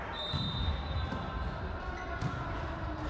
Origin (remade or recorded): recorded